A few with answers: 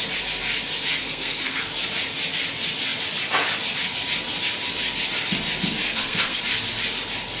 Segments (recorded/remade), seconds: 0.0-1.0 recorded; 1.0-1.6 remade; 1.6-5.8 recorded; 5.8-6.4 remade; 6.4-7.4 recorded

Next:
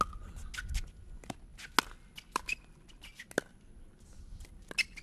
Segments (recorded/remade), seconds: 0.0-5.0 recorded